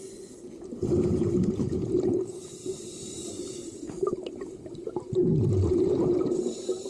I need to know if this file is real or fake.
real